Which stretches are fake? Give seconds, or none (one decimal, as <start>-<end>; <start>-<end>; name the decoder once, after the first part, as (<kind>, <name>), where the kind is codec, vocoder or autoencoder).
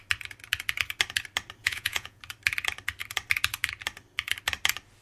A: 1.6-2.2 (vocoder, Vocos)